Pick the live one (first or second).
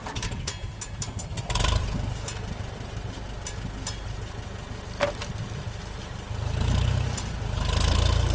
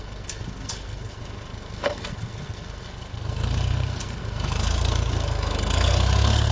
first